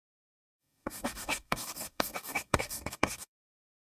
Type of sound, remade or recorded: remade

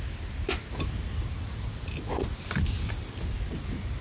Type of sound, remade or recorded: recorded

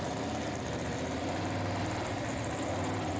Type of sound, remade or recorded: recorded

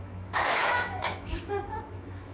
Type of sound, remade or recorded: remade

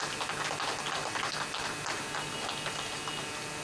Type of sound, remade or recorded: recorded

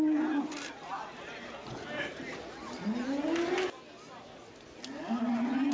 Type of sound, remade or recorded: recorded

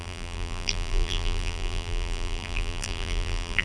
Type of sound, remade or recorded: remade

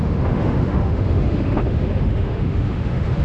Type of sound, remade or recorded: remade